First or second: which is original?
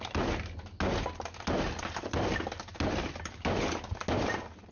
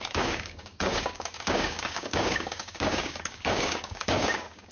first